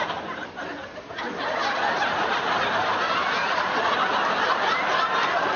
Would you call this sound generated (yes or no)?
yes